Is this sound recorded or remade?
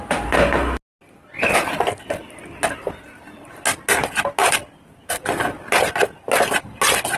recorded